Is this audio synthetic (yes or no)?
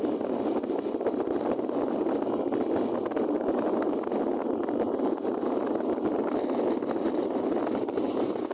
no